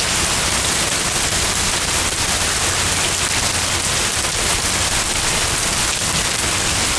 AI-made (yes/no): no